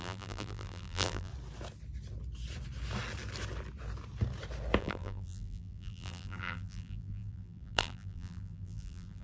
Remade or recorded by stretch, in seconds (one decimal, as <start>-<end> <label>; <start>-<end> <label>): 0.0-1.3 remade; 1.3-4.8 recorded; 4.8-9.2 remade